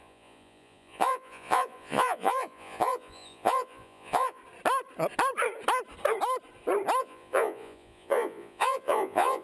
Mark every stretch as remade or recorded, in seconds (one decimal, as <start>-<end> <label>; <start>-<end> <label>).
0.0-4.4 remade; 4.4-7.0 recorded; 7.0-9.4 remade